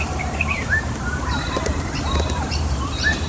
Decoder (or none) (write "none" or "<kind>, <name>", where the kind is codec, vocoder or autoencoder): vocoder, BigVGAN v2